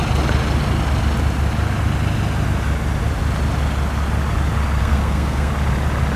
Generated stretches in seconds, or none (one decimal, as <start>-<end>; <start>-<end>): 4.8-5.5